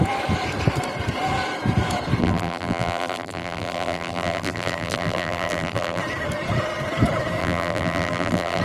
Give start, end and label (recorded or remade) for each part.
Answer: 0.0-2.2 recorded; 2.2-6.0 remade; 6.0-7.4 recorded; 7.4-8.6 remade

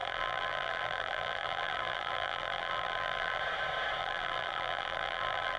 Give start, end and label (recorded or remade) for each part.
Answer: 0.0-3.4 remade; 3.4-4.0 recorded; 4.0-5.6 remade

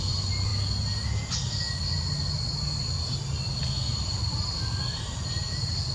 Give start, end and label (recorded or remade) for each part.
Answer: 0.0-5.9 recorded

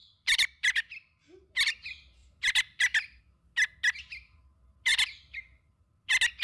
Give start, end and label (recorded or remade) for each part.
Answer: 0.0-1.7 remade; 1.7-2.2 recorded; 2.2-3.2 remade; 3.2-4.9 recorded; 4.9-5.8 remade; 5.8-6.4 recorded

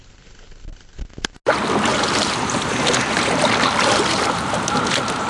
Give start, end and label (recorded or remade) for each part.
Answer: 0.0-1.9 recorded; 1.9-4.7 remade; 4.7-5.3 recorded

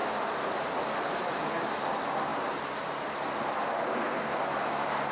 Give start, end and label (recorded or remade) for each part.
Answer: 0.0-5.1 recorded

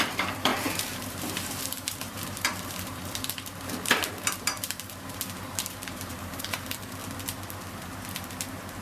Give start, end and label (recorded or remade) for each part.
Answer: 0.0-7.0 remade; 7.0-7.7 recorded; 7.7-8.8 remade

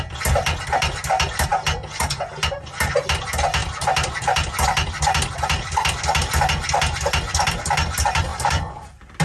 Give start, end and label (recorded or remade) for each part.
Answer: 0.0-8.3 recorded; 8.3-9.2 remade